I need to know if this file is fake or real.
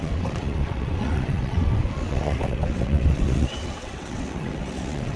fake